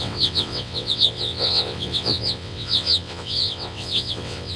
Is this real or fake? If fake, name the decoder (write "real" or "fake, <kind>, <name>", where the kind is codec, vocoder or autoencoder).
fake, vocoder, WaveNeXt